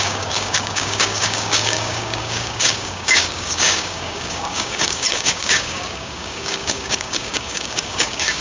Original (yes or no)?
no